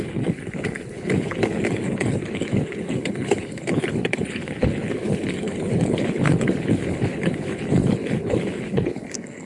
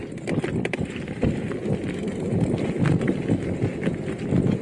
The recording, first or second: second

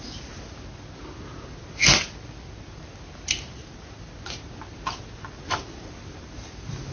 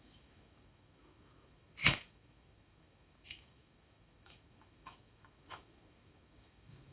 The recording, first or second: first